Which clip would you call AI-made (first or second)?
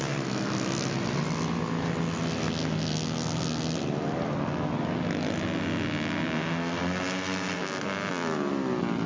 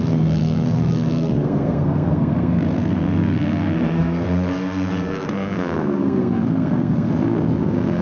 second